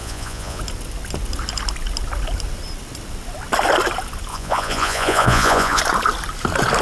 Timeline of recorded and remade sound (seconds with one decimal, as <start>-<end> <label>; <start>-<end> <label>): 0.0-0.6 remade; 0.6-4.3 recorded; 4.3-5.8 remade; 5.8-6.8 recorded